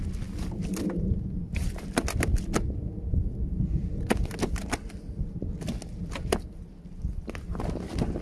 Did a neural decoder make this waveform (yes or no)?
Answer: no